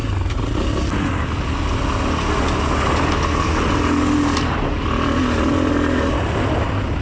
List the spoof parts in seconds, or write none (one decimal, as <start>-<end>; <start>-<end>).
none